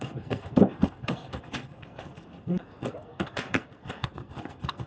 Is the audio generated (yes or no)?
yes